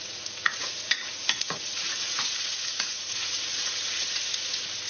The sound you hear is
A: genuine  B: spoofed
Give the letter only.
B